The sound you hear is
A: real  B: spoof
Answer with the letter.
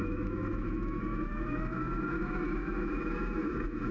B